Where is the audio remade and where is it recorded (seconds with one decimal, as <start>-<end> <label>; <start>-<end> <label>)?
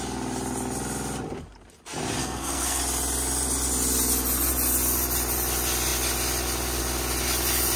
0.0-2.2 recorded; 2.2-2.8 remade; 2.8-7.8 recorded